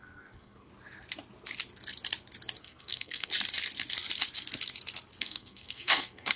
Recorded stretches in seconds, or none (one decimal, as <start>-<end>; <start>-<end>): 0.7-2.6; 3.3-5.2